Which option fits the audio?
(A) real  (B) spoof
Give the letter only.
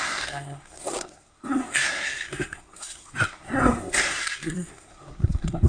B